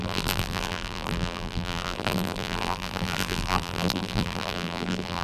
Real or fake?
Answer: fake